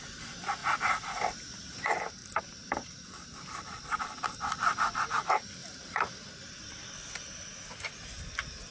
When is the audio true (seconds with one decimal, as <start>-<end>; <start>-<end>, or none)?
0.0-0.6; 1.3-2.2; 4.4-5.6; 6.8-8.7